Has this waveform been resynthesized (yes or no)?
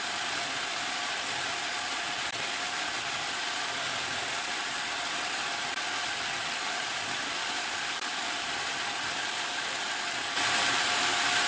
yes